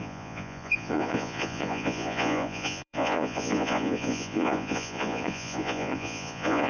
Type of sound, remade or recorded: remade